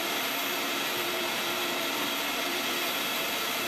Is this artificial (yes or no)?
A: yes